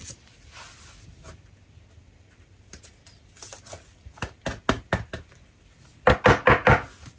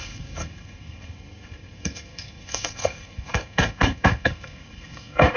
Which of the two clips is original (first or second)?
first